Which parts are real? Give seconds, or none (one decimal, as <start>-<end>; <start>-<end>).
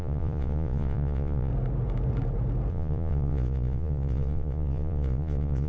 1.5-2.7